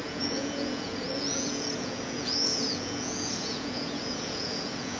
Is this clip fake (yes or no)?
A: yes